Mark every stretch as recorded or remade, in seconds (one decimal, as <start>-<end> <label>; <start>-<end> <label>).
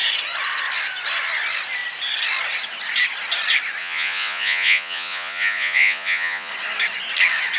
0.0-3.8 recorded; 3.8-6.5 remade; 6.5-7.6 recorded